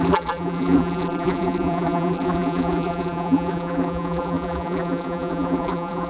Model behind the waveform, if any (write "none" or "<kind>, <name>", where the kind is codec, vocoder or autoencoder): vocoder, BigVGAN v2